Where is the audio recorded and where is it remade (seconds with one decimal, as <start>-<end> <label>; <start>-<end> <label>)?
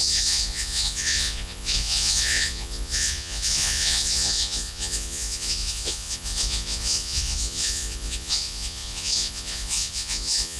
0.0-10.6 remade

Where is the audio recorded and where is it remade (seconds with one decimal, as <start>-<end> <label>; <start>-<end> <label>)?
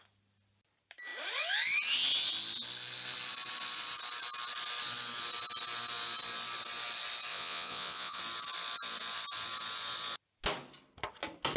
0.0-7.3 recorded; 7.3-8.2 remade; 8.2-11.6 recorded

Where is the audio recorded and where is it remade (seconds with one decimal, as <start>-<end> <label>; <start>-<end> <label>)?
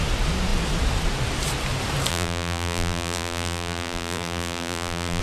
0.0-2.1 recorded; 2.1-5.2 remade